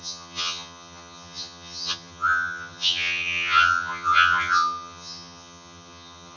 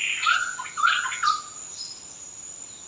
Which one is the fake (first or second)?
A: first